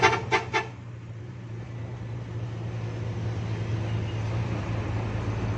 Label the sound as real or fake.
real